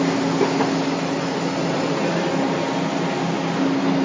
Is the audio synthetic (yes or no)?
no